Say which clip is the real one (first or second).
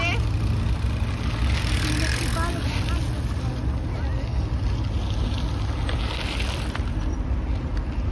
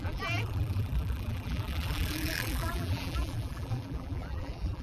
first